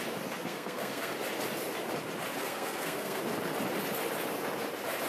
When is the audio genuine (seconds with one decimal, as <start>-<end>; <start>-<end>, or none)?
0.0-0.4; 1.1-2.4; 3.2-5.1